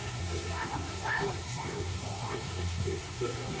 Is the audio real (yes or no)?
no